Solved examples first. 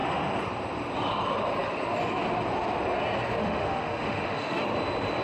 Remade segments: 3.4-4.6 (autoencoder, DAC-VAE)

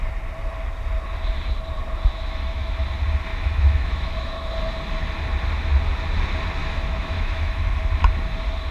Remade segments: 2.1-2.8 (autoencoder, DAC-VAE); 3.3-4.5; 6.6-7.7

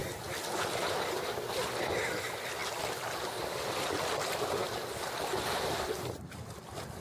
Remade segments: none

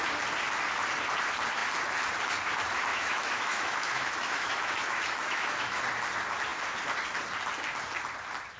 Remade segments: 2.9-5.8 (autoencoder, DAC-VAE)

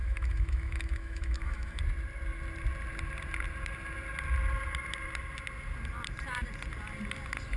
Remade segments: 0.0-1.8 (autoencoder, DAC-VAE)

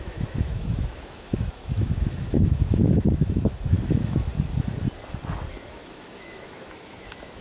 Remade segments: 0.0-4.3 (autoencoder, DAC-VAE); 5.5-7.4